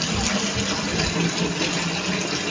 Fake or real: real